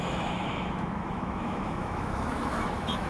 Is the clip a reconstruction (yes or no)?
yes